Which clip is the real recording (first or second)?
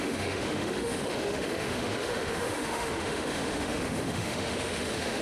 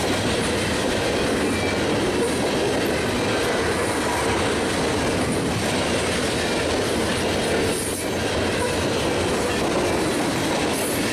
second